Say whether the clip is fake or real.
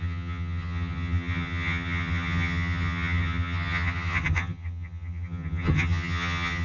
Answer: fake